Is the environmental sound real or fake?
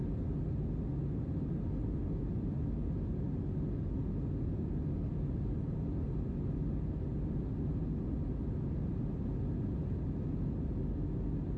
real